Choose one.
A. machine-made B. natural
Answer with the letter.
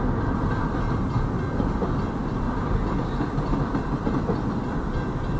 B